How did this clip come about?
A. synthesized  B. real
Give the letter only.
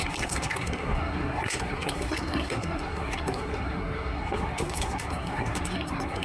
A